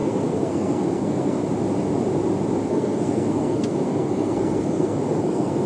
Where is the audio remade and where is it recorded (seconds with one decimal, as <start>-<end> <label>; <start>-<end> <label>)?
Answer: 0.0-1.4 remade; 1.4-2.7 recorded; 2.7-5.7 remade